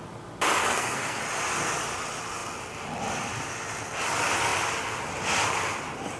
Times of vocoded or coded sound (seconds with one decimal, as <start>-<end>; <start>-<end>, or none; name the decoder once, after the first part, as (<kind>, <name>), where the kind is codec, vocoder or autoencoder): 0.6-1.2 (codec, SNAC)